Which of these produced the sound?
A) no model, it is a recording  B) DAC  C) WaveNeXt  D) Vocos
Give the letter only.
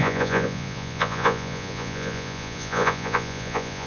D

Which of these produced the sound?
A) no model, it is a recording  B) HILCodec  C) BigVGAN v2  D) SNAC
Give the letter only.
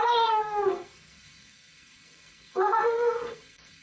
D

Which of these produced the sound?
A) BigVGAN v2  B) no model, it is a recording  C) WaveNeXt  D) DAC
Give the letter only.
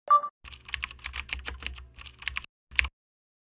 B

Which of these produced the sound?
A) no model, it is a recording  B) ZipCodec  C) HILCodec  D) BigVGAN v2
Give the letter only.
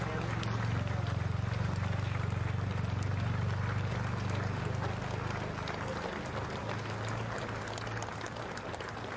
A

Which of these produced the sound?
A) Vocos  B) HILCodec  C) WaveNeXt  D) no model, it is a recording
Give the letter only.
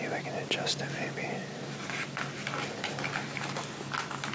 D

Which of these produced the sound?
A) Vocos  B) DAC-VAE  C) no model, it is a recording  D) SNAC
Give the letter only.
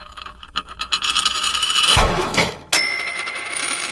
B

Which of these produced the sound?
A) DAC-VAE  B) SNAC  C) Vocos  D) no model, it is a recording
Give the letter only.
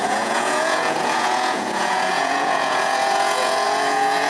C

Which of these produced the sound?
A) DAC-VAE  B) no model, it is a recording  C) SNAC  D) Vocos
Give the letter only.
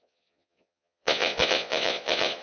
D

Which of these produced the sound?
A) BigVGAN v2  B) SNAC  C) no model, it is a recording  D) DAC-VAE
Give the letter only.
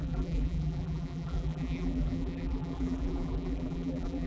A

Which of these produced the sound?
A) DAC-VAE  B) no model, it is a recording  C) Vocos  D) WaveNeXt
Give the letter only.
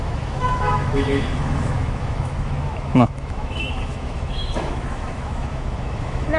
A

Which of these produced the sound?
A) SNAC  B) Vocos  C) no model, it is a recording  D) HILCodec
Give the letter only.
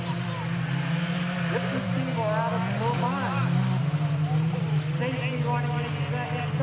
C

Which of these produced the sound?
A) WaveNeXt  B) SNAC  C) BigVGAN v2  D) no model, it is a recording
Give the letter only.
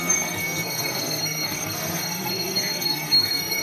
B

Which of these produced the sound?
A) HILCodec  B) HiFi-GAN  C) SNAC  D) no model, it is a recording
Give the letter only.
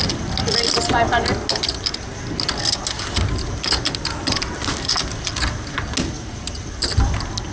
D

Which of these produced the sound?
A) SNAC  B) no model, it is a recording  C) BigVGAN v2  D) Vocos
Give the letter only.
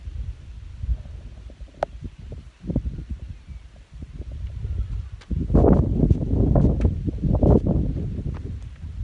B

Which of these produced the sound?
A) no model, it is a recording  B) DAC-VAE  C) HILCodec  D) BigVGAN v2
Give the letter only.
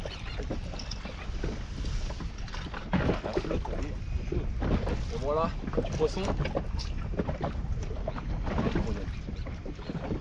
A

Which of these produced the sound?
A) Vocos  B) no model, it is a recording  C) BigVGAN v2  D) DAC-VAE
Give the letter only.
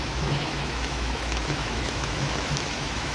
D